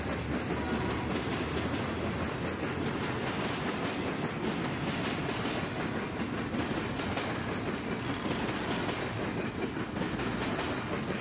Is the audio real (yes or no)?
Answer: yes